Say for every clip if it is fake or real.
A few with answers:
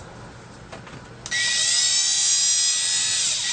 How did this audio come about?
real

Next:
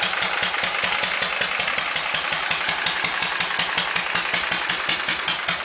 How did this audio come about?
real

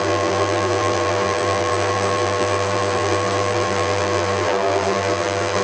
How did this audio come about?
fake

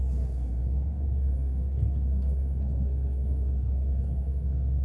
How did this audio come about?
fake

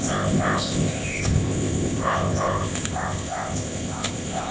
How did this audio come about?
fake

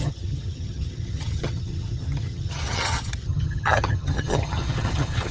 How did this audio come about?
fake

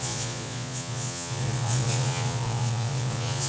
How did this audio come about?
fake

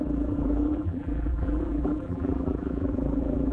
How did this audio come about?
fake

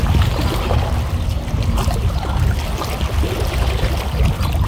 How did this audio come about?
real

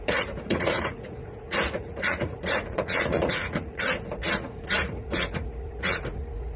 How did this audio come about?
fake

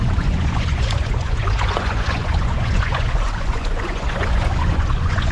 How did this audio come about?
fake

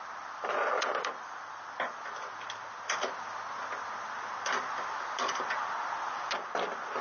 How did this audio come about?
real